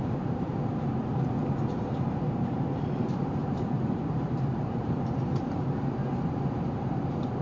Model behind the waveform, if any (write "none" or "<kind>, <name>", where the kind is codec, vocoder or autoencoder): vocoder, BigVGAN v2